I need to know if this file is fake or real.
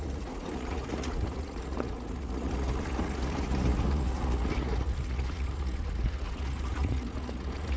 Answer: fake